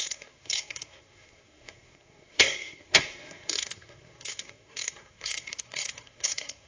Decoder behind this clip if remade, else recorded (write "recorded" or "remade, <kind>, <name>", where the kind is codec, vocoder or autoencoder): remade, codec, SNAC